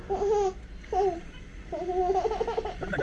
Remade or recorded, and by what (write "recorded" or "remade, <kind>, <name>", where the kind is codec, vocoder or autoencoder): recorded